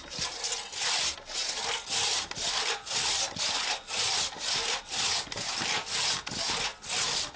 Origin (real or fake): real